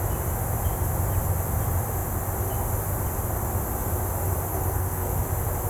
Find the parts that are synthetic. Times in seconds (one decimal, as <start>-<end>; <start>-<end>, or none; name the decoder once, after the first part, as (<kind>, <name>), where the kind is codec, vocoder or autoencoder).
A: 4.5-5.2 (codec, SNAC)